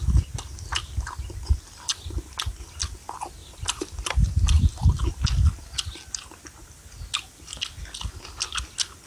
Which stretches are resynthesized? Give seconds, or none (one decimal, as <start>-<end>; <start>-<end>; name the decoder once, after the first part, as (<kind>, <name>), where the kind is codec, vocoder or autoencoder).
3.4-4.9 (vocoder, BigVGAN v2)